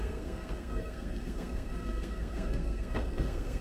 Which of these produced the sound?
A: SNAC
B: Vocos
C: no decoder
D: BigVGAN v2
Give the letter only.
A